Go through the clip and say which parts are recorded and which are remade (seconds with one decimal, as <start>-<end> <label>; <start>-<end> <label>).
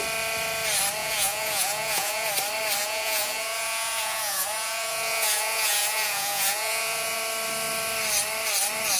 0.0-1.0 recorded; 1.0-2.3 remade; 2.3-2.8 recorded; 2.8-7.2 remade; 7.2-9.0 recorded